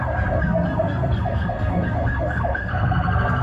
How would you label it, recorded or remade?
remade